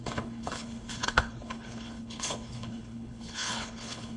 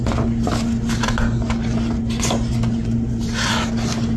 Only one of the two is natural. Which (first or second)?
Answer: second